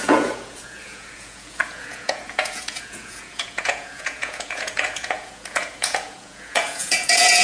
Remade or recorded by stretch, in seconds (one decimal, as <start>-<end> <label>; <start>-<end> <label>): 0.0-7.4 remade